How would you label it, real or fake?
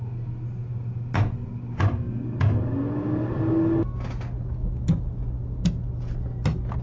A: real